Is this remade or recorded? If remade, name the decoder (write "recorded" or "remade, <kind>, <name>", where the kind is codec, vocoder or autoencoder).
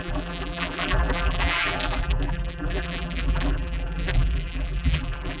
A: remade, vocoder, BigVGAN v2